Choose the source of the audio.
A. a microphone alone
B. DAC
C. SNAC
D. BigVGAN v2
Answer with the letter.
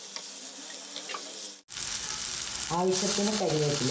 A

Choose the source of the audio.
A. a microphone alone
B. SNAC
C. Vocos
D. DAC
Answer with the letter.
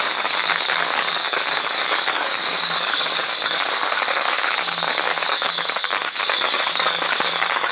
D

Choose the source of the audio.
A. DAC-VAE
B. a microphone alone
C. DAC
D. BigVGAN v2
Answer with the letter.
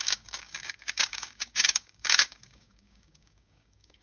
C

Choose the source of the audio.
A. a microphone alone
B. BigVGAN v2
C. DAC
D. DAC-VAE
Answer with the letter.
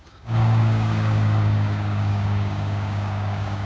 C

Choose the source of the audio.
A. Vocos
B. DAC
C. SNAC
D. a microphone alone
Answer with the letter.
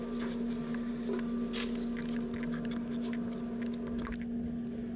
D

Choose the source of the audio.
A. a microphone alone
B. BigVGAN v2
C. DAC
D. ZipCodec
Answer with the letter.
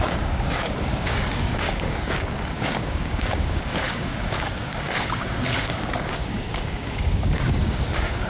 C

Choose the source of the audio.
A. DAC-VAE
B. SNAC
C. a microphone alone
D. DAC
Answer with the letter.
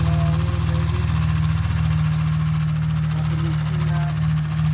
C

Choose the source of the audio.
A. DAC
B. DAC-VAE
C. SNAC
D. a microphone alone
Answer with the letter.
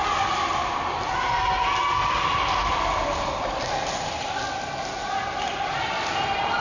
D